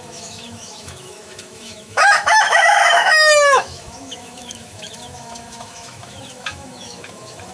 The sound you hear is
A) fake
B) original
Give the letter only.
A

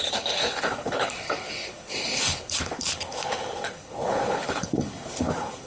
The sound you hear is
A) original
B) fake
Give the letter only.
B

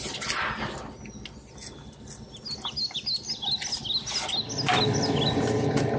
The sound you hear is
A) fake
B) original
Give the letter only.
B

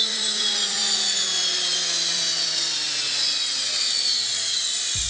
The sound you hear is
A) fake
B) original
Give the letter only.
A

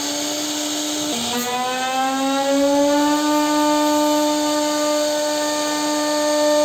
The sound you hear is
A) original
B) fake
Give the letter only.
A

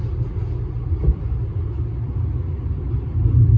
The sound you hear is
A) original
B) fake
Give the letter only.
A